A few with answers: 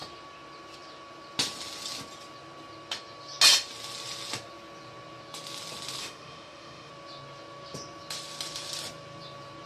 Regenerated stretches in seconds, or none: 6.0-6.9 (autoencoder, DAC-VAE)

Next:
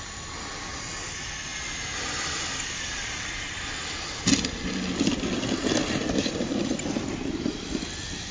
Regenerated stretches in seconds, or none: none

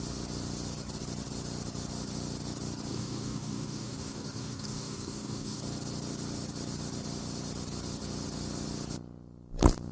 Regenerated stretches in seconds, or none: 2.9-5.6 (codec, DAC)

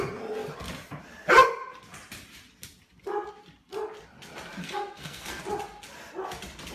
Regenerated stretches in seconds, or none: 4.6-5.4 (codec, SNAC)

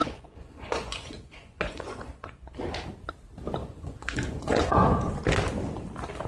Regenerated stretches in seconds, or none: 0.0-2.6 (vocoder, Vocos); 3.6-5.1

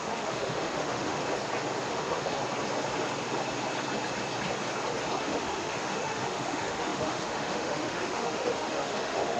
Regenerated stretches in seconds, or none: 0.0-1.2 (autoencoder, DAC-VAE); 1.9-2.4; 5.2-9.4

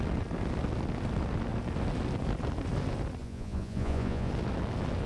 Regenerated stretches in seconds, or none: 3.2-4.3 (vocoder, Vocos)

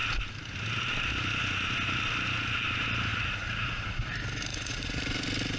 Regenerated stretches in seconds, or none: 3.1-3.8 (vocoder, Vocos); 4.5-5.0